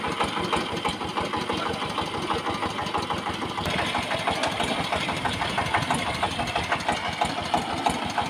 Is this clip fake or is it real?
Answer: real